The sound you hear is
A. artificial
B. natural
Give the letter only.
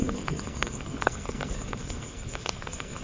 A